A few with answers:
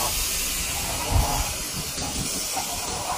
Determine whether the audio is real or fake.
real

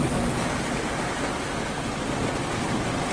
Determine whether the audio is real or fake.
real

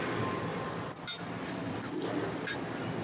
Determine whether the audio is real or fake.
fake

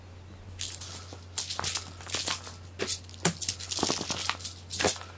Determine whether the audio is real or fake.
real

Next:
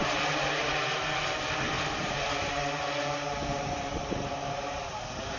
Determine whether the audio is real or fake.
fake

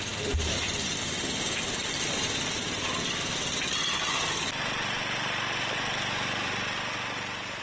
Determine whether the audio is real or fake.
real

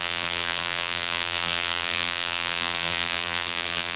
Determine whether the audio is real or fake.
fake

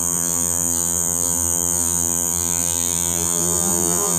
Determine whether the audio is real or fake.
fake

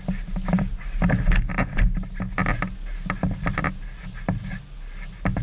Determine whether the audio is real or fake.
real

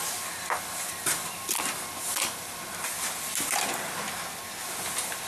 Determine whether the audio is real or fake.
real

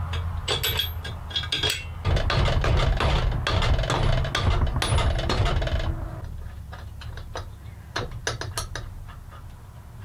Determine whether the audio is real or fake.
real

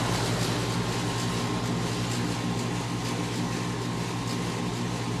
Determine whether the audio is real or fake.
real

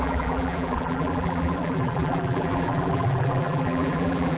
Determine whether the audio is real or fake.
fake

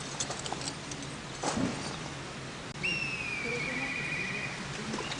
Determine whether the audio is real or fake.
real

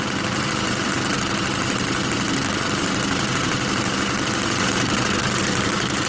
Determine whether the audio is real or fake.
fake